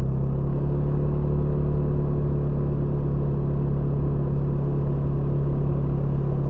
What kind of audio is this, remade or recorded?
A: recorded